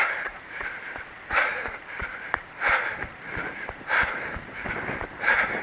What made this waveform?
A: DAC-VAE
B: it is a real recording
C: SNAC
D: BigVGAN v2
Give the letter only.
D